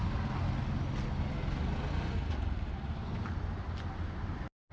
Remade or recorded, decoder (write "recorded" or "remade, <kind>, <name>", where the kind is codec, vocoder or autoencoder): recorded